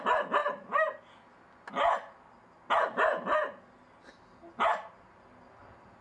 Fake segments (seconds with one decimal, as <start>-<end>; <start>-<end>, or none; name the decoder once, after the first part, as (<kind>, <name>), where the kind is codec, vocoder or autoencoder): none